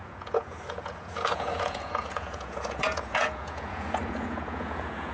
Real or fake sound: fake